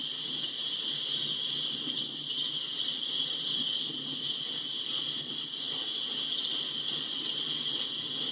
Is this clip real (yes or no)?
yes